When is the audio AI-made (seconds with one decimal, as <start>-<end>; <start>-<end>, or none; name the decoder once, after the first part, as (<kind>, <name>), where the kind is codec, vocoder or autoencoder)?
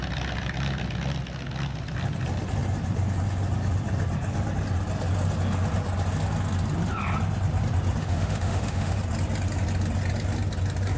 8.0-9.0 (autoencoder, DAC-VAE)